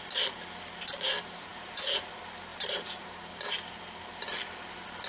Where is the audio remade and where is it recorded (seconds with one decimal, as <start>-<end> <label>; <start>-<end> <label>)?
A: 0.0-1.5 recorded; 1.5-2.1 remade; 2.1-2.5 recorded; 2.5-3.3 remade; 3.3-5.1 recorded